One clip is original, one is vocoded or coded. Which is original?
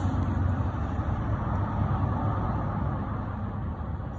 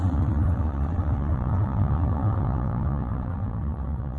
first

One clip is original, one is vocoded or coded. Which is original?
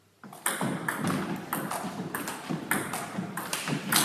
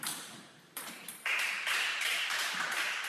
first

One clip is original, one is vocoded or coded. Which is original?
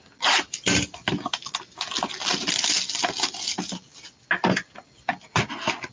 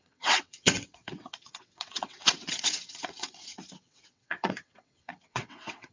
first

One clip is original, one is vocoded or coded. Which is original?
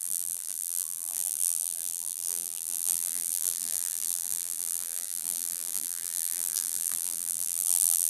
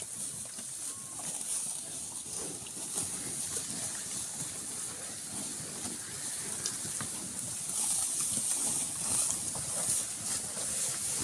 second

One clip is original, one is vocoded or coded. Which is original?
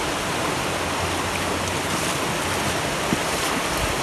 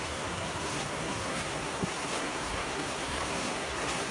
first